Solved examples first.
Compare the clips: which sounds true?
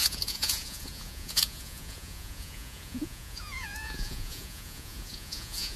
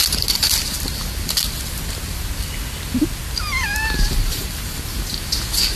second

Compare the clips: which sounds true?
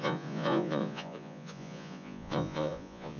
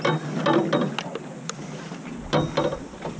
second